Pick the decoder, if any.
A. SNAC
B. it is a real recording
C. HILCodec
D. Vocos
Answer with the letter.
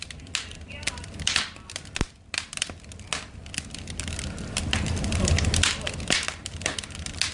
B